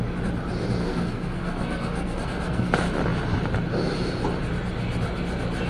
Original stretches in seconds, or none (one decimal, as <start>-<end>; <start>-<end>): 0.0-0.8; 2.7-5.7